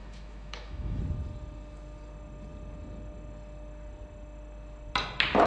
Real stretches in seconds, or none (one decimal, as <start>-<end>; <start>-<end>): 1.0-5.5